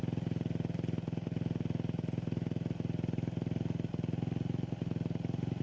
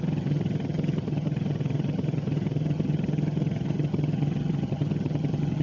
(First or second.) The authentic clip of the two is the first